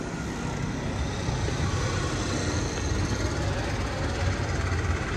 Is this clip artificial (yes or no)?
no